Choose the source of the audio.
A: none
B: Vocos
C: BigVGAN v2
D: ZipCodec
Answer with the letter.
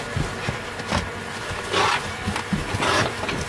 A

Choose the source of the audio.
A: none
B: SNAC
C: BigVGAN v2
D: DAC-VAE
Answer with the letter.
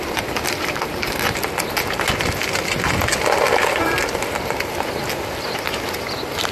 A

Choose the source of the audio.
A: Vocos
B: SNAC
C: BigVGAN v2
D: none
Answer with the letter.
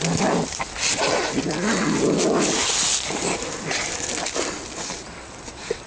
D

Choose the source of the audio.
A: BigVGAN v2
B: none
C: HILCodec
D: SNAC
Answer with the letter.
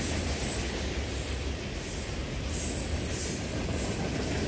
B